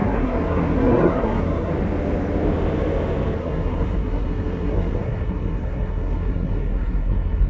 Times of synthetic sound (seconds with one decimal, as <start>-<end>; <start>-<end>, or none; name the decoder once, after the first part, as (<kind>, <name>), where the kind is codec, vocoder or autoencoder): 0.0-1.7 (codec, SNAC); 3.4-7.5